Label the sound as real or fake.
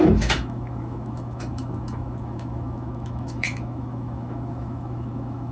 fake